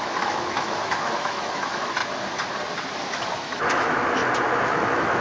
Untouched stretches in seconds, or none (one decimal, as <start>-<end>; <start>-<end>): 2.0-3.1; 4.2-4.7